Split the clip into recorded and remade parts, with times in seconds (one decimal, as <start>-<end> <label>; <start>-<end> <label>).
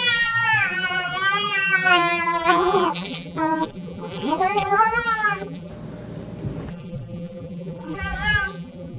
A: 0.0-5.7 remade; 5.7-6.7 recorded; 6.7-9.0 remade